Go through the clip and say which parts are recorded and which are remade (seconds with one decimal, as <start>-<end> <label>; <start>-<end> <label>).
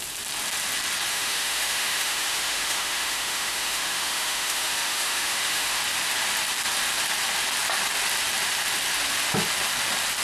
0.0-1.1 recorded; 1.1-5.8 remade; 5.8-10.2 recorded